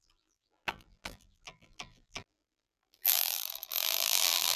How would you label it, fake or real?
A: fake